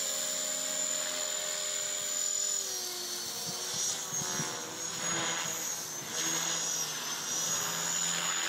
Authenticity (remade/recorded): recorded